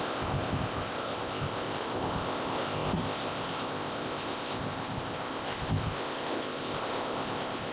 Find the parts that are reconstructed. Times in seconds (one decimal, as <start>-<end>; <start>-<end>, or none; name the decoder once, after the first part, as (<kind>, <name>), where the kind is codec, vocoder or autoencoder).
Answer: 0.0-7.7 (codec, ZipCodec)